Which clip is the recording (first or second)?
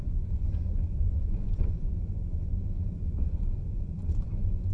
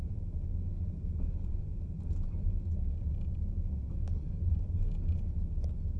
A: second